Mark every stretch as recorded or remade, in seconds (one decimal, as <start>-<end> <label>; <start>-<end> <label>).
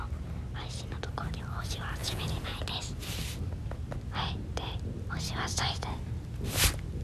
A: 0.0-2.0 recorded; 2.0-2.6 remade; 2.6-7.0 recorded